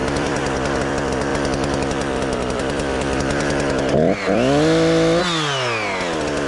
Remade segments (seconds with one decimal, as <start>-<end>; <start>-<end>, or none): 0.0-0.9; 1.3-5.2

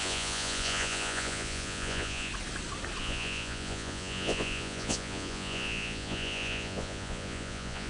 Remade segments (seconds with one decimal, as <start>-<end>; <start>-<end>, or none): 0.0-2.3; 3.0-7.9

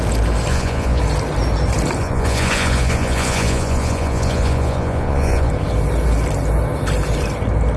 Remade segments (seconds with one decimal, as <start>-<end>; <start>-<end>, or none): 0.5-1.0; 2.0-5.5

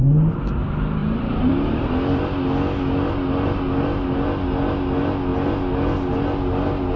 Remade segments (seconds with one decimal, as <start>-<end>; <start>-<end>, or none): 1.0-2.2

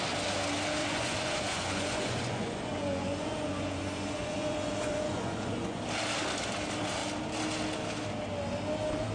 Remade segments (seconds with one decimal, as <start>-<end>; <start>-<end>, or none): 0.8-5.8

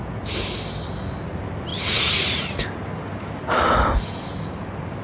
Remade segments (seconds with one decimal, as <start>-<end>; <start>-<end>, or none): 1.7-2.6

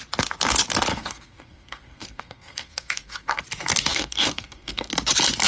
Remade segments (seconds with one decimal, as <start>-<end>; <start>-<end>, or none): 0.9-3.4; 3.9-4.9

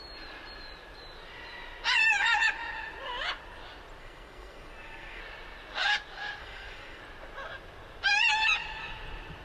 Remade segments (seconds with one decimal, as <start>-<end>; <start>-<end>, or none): 4.0-5.2; 6.4-7.0